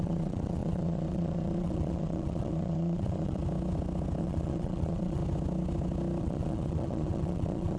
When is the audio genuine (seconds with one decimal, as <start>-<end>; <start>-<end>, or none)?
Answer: 3.4-4.2; 5.2-6.2